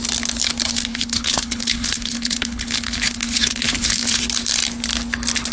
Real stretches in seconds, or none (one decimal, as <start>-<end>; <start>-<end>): 0.0-0.9; 4.2-5.5